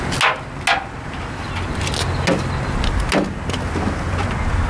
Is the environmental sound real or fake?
real